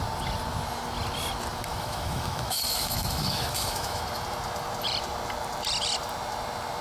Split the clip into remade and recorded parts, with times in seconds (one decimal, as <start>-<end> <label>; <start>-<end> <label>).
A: 0.0-1.7 recorded; 1.7-4.0 remade; 4.0-6.8 recorded